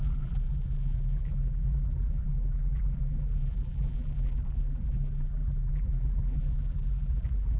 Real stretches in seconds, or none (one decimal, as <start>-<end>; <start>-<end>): none